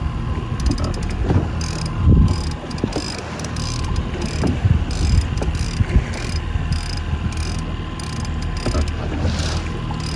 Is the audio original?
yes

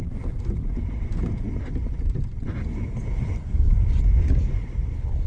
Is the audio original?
yes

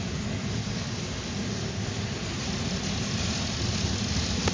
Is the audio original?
yes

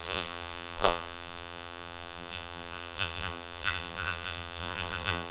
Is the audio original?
no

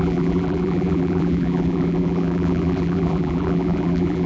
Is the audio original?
no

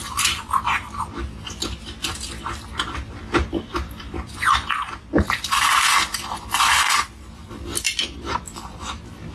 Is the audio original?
no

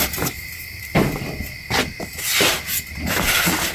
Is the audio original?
yes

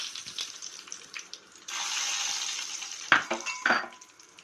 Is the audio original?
no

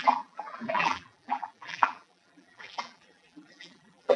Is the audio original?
no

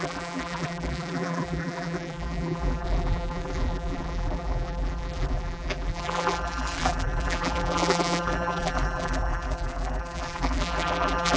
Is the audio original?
no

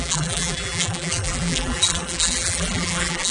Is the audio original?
no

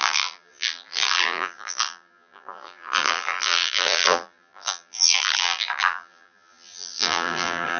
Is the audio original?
no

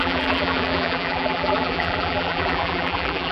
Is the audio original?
no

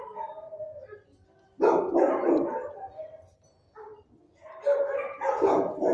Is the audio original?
yes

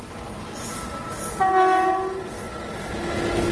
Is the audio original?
yes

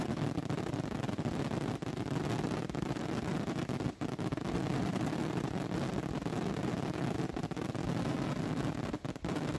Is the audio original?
yes